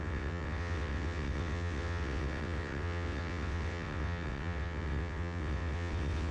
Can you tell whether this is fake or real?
fake